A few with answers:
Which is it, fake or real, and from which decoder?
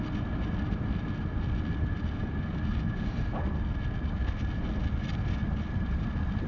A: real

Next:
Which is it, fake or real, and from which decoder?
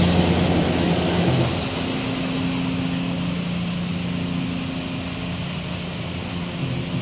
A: real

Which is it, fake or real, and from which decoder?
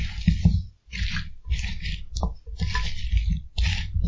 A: real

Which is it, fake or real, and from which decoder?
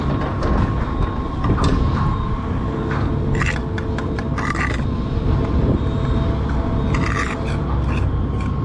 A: real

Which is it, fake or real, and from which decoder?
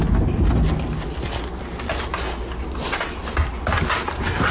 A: real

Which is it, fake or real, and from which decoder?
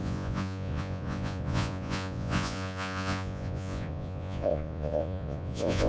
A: fake, vocoder, Vocos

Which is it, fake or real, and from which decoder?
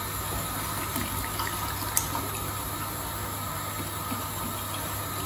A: real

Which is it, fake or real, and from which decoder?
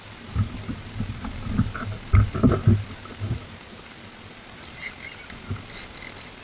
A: real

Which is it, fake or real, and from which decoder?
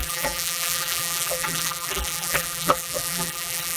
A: fake, vocoder, BigVGAN v2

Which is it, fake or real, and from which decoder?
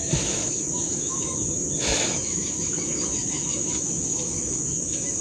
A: fake, autoencoder, DAC-VAE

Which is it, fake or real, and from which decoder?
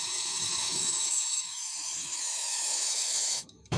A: fake, autoencoder, DAC-VAE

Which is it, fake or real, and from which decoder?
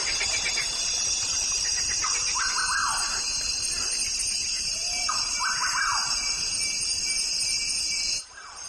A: real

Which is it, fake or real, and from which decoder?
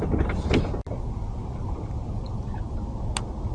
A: real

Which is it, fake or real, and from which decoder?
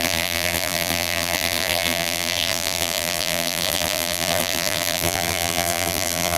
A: fake, vocoder, BigVGAN v2